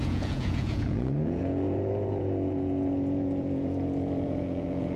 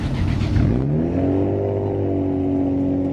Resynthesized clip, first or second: first